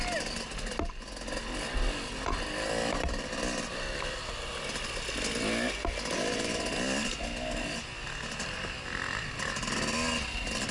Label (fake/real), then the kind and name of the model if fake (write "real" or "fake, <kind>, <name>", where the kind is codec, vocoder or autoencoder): real